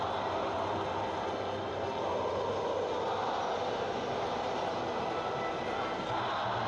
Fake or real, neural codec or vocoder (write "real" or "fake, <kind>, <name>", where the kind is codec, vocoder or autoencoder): real